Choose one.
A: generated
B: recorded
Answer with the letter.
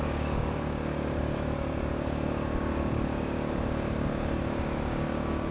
A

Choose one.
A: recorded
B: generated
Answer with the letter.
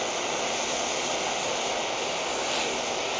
A